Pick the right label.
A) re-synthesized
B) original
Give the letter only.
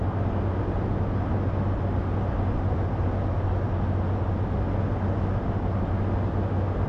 B